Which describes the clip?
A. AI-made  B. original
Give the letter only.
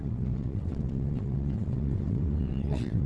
A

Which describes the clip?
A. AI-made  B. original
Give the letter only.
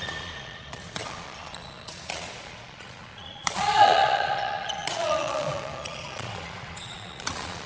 A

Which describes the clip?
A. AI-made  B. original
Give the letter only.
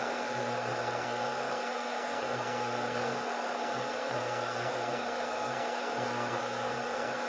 A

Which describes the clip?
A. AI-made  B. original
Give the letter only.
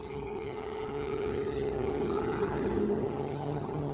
A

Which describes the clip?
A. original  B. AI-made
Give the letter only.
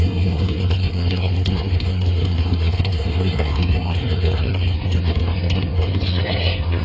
B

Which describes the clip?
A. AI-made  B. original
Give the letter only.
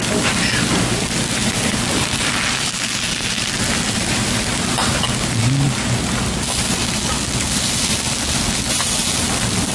B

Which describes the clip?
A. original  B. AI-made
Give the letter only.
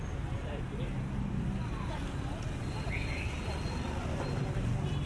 A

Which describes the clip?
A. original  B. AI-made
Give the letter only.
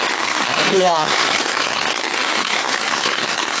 B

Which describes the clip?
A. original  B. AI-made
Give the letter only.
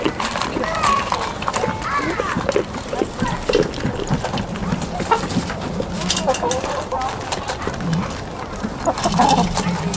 A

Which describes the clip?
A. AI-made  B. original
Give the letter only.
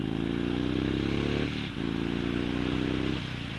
B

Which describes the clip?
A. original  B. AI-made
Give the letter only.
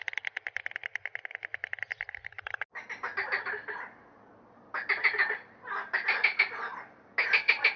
A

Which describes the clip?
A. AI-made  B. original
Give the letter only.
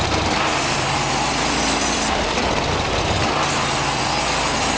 B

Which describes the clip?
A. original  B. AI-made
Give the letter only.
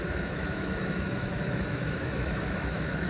B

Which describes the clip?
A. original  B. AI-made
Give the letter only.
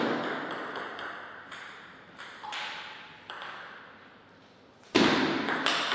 A